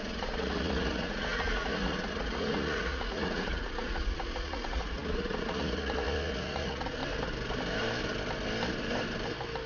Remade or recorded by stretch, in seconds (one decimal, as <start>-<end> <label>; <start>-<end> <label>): 0.0-7.0 remade; 7.0-9.7 recorded